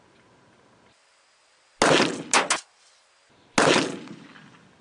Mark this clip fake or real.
real